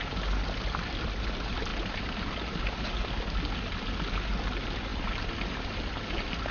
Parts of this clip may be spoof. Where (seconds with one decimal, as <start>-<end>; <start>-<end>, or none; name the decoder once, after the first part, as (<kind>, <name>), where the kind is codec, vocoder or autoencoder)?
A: none